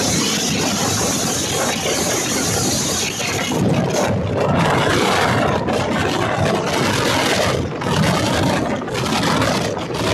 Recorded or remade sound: recorded